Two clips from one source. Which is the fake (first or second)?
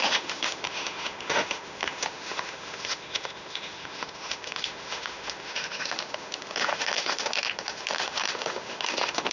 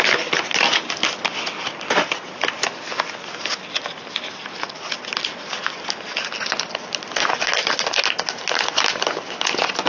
first